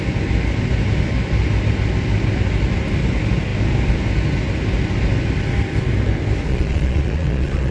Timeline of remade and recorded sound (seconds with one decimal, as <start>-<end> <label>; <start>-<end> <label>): 0.0-6.5 recorded; 6.5-7.7 remade